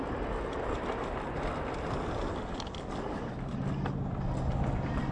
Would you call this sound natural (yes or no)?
yes